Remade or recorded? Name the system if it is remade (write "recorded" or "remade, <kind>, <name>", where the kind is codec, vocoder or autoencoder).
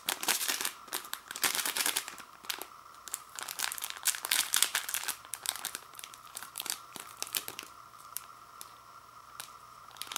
remade, vocoder, BigVGAN v2